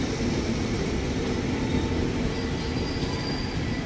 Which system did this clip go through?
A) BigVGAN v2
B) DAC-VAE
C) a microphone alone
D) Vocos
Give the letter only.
C